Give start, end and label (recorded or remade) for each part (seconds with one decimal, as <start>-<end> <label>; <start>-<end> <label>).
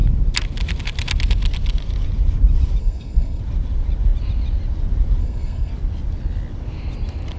0.0-2.8 recorded; 2.8-3.4 remade; 3.4-5.2 recorded; 5.2-5.7 remade; 5.7-7.4 recorded